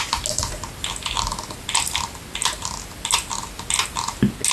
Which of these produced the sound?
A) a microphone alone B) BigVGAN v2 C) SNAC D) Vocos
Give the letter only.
A